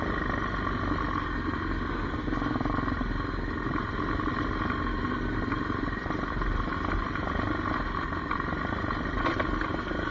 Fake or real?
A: real